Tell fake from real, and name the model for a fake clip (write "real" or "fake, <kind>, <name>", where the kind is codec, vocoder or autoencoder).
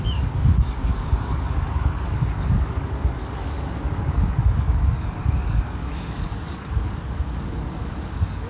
fake, codec, DAC